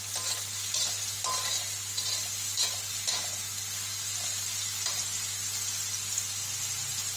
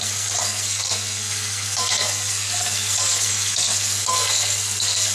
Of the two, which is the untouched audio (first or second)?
first